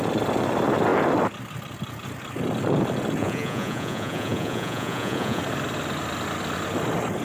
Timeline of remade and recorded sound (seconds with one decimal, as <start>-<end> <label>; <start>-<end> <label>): 0.0-3.2 recorded; 3.2-5.4 remade; 5.4-7.2 recorded